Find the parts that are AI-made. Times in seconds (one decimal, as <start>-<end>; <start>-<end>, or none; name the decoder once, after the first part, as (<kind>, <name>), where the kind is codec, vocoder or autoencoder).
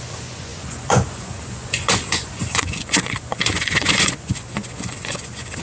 0.0-5.6 (vocoder, Vocos)